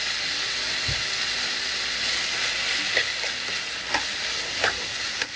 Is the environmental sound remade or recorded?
recorded